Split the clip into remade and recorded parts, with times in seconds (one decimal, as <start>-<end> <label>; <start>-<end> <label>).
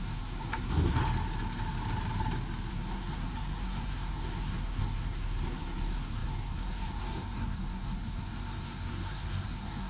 0.0-1.0 remade; 1.0-2.7 recorded; 2.7-9.9 remade